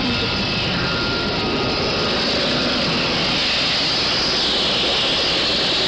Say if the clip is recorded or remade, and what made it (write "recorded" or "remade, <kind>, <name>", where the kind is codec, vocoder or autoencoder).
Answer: recorded